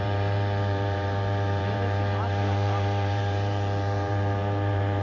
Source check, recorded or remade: remade